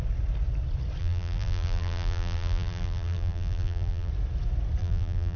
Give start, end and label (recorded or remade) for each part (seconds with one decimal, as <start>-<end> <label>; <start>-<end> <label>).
0.0-1.0 recorded; 1.0-4.1 remade; 4.1-4.8 recorded; 4.8-5.4 remade